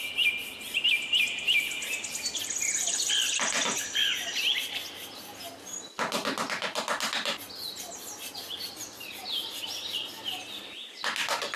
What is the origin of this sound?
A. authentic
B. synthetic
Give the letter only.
A